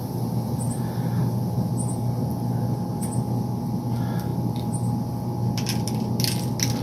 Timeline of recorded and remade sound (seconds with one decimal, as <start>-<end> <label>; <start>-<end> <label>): 0.0-6.8 recorded